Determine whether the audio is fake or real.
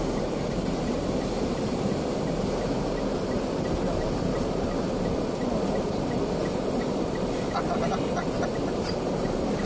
real